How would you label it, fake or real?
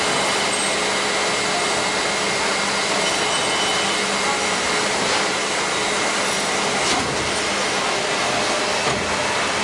real